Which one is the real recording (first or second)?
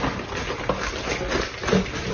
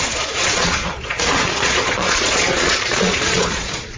first